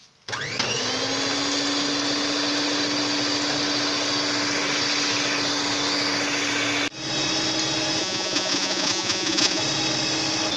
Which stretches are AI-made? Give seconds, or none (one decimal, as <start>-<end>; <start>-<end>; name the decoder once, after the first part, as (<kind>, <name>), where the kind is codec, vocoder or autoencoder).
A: 8.0-9.6 (vocoder, Vocos)